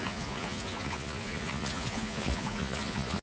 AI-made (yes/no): yes